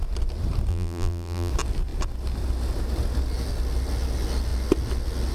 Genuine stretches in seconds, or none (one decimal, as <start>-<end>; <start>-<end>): 0.0-0.7; 1.5-5.3